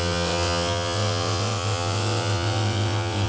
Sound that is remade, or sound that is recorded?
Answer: remade